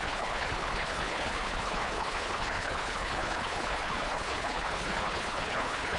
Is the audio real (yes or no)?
no